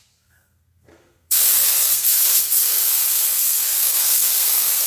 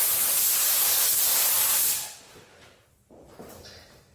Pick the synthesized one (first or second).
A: first